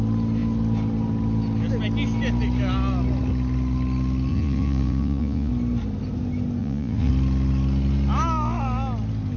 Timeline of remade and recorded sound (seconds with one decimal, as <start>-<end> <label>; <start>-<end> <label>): 0.0-4.3 recorded; 4.3-5.5 remade; 5.5-6.6 recorded; 6.6-7.1 remade; 7.1-9.4 recorded